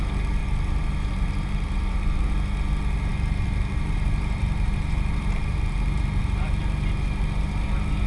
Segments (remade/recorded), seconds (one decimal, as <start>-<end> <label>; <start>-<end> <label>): 0.0-0.4 recorded; 0.4-2.2 remade; 2.2-3.1 recorded; 3.1-6.6 remade; 6.6-8.1 recorded